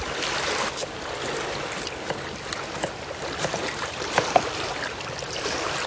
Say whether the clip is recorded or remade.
recorded